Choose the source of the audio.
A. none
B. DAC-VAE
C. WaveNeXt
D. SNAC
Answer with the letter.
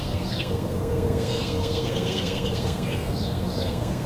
D